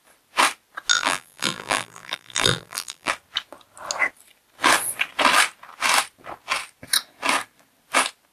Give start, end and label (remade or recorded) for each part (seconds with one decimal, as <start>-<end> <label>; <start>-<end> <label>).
0.0-0.9 recorded; 0.9-3.1 remade; 3.1-8.3 recorded